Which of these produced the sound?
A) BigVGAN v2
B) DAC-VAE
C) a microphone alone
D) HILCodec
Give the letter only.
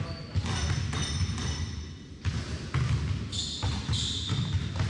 C